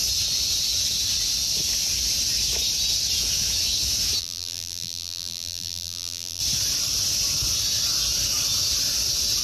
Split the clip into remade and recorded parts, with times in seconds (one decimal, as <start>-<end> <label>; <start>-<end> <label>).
0.0-4.2 recorded; 4.2-6.4 remade; 6.4-9.4 recorded